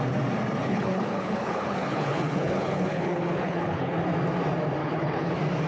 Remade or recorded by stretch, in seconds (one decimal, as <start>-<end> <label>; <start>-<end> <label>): 0.0-0.6 recorded; 0.6-4.0 remade; 4.0-4.8 recorded; 4.8-5.3 remade; 5.3-5.7 recorded

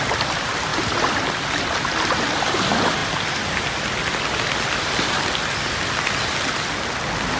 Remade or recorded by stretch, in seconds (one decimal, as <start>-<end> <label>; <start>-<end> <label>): 0.0-7.4 recorded